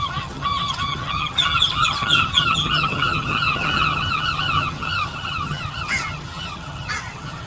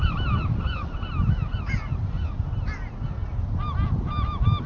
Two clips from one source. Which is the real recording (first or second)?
second